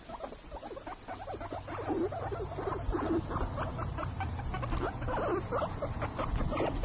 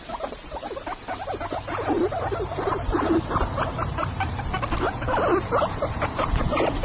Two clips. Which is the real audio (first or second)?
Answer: first